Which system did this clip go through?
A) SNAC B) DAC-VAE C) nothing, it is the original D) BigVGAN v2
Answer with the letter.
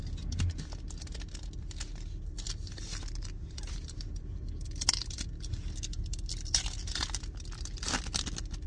C